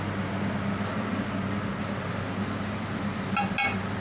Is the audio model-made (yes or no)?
no